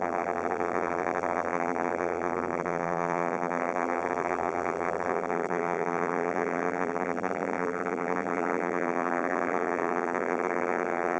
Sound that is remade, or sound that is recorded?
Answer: remade